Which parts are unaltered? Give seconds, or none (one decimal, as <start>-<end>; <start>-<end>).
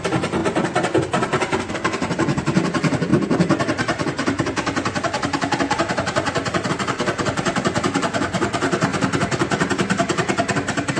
0.4-1.7